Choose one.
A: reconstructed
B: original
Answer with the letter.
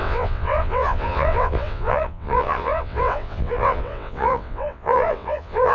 A